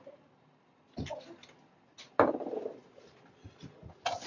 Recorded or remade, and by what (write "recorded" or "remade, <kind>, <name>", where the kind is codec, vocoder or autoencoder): recorded